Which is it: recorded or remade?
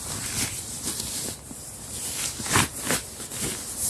recorded